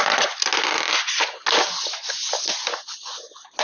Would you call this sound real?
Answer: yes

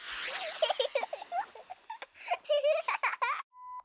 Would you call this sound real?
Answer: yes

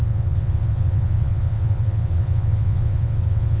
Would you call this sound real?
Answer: no